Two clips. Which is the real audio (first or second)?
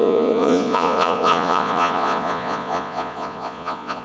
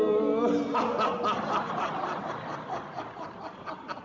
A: second